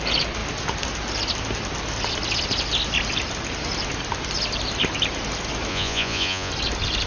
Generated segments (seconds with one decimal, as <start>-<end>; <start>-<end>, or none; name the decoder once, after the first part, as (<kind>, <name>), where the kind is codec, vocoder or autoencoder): 5.7-6.5 (vocoder, Vocos)